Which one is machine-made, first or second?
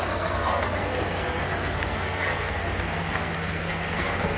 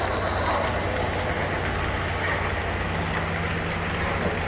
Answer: first